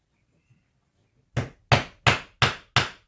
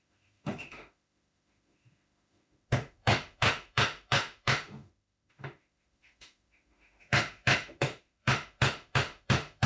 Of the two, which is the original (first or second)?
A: first